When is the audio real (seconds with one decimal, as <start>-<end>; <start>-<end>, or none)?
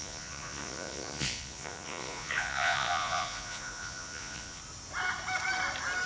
4.6-6.1